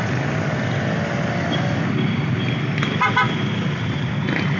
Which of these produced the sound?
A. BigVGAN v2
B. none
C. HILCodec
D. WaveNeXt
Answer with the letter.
B